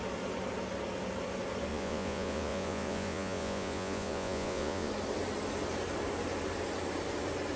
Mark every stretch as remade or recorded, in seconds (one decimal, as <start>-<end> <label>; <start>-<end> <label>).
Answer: 0.0-1.7 recorded; 1.7-4.9 remade; 4.9-7.6 recorded